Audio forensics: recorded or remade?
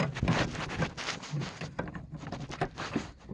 recorded